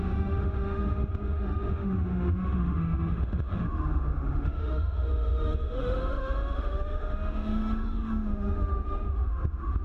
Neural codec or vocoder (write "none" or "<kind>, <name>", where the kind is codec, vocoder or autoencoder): autoencoder, DAC-VAE